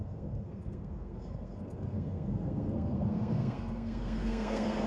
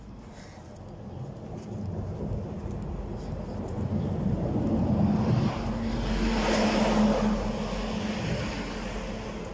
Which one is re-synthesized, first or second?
first